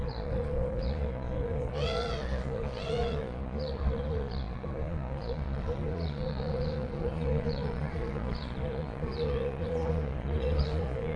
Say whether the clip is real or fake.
fake